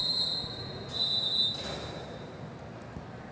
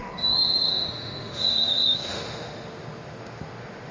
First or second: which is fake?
second